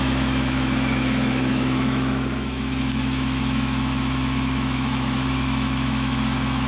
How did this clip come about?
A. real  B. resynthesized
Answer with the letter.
B